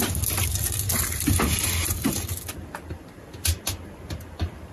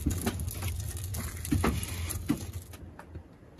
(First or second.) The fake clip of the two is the first